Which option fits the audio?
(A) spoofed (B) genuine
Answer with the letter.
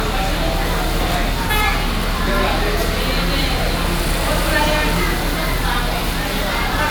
B